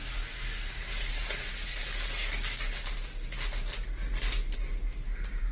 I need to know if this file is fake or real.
real